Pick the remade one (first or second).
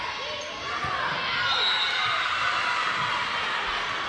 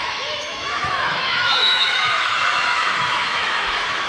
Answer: second